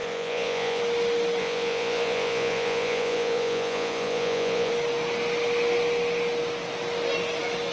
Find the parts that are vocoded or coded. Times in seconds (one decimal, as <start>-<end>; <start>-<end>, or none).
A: 0.0-0.8; 1.4-4.7